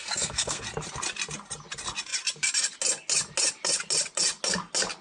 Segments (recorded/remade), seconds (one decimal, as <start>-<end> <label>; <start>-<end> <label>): 0.0-0.6 remade; 0.6-5.0 recorded